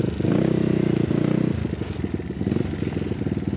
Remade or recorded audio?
recorded